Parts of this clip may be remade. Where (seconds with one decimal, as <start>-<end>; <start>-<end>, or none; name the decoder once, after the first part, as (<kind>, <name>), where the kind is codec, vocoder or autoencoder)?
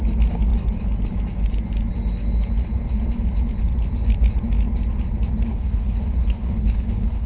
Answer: 5.5-7.3 (codec, HILCodec)